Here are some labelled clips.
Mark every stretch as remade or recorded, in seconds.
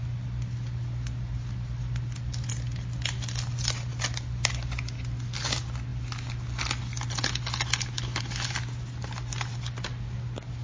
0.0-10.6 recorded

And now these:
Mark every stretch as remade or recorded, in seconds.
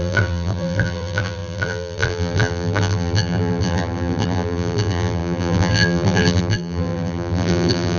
0.0-8.0 remade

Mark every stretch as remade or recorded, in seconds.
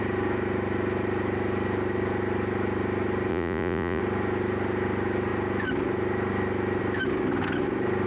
0.0-3.3 recorded; 3.3-4.0 remade; 4.0-8.1 recorded